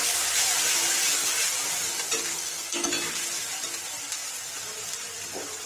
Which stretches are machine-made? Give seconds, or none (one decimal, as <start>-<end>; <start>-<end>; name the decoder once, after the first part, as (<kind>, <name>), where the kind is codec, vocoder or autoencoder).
2.3-2.9 (codec, SNAC)